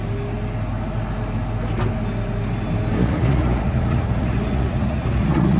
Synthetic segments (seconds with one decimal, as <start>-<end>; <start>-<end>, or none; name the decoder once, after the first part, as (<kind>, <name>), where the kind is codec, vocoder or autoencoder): 3.0-5.6 (vocoder, Vocos)